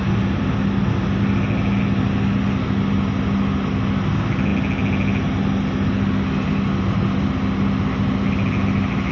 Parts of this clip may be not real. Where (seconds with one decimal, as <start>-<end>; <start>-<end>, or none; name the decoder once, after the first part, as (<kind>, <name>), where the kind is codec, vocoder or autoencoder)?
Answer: none